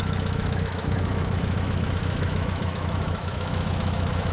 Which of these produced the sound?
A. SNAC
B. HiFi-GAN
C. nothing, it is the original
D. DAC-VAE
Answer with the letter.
D